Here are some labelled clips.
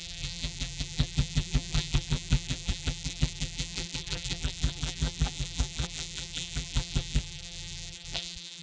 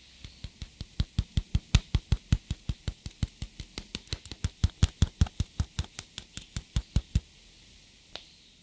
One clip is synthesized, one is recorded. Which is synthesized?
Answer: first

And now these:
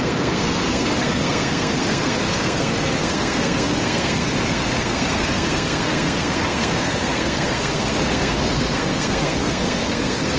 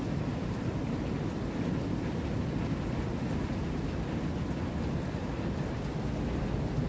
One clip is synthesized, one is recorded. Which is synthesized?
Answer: first